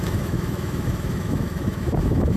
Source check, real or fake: fake